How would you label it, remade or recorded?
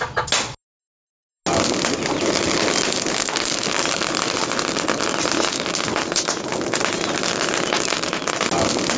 recorded